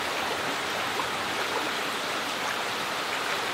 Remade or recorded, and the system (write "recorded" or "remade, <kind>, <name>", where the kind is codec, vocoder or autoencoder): recorded